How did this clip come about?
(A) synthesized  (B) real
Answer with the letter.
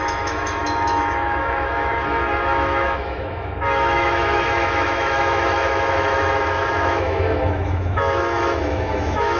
A